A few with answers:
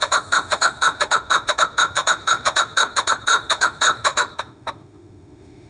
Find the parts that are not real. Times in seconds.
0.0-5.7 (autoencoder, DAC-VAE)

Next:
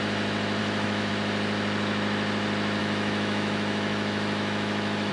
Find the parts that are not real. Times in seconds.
0.6-1.1 (autoencoder, DAC-VAE); 2.8-5.1